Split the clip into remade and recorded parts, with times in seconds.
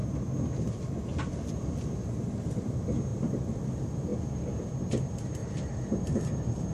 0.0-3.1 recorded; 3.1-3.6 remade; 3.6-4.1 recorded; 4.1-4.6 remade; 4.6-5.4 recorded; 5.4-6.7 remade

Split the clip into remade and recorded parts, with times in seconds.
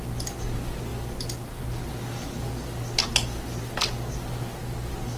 0.0-5.2 recorded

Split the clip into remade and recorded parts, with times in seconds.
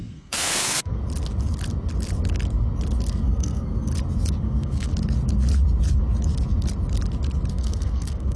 0.0-1.0 remade; 1.0-3.1 recorded; 3.1-3.9 remade; 3.9-4.4 recorded; 4.4-4.9 remade; 4.9-7.5 recorded; 7.5-8.4 remade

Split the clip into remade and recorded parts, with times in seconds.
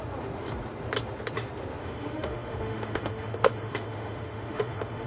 0.0-1.8 recorded; 1.8-5.1 remade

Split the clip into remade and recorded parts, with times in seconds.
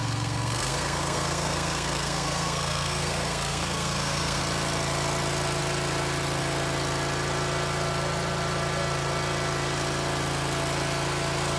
0.0-4.4 remade; 4.4-11.6 recorded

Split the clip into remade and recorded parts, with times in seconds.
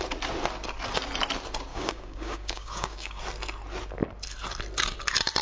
0.0-1.7 recorded; 1.7-3.2 remade; 3.2-5.4 recorded